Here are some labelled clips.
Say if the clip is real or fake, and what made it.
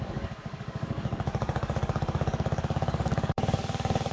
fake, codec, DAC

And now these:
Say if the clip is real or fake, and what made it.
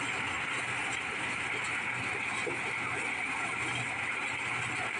real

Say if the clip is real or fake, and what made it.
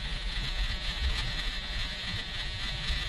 fake, vocoder, Vocos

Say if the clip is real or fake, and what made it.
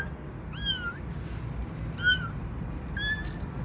real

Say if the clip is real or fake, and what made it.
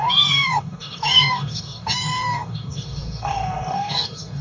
fake, codec, DAC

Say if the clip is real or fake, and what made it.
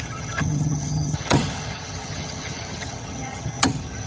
fake, vocoder, HiFi-GAN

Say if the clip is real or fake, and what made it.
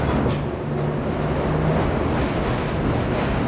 real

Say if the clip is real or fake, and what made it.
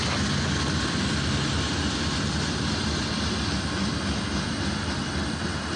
real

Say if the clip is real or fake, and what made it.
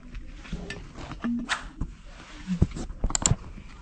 real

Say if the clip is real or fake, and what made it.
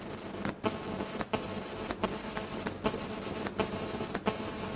fake, vocoder, BigVGAN v2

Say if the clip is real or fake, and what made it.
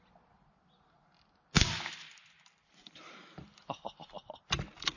real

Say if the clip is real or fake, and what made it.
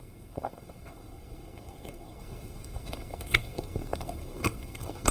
fake, codec, SNAC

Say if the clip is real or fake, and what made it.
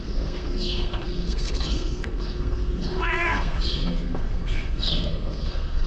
fake, codec, SNAC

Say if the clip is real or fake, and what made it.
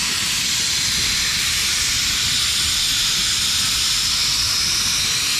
real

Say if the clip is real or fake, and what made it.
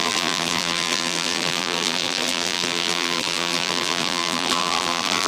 fake, vocoder, BigVGAN v2